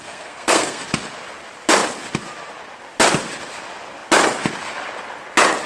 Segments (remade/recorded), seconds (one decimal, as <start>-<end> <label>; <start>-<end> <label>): 0.0-0.8 remade; 0.8-5.7 recorded